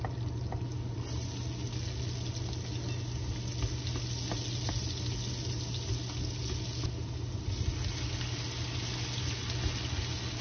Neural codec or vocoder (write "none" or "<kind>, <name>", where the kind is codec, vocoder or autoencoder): none